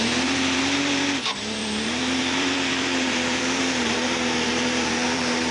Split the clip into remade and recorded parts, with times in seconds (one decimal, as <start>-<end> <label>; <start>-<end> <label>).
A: 0.0-5.5 remade